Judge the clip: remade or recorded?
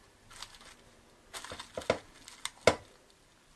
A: recorded